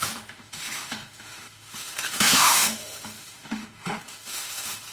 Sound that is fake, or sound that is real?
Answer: fake